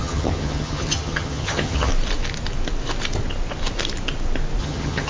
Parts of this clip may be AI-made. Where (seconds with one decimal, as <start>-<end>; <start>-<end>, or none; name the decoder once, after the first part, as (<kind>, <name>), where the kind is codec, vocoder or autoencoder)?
0.0-1.9 (vocoder, HiFi-GAN); 4.6-5.1